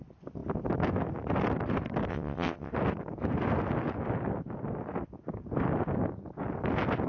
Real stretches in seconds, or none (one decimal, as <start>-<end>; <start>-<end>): 0.0-2.1; 2.7-7.1